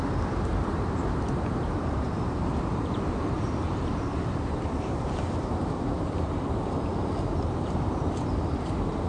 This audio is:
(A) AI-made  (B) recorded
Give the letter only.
A